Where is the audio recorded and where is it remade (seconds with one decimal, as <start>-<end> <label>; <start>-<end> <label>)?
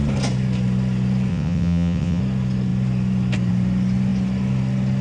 0.0-1.3 recorded; 1.3-2.2 remade; 2.2-5.0 recorded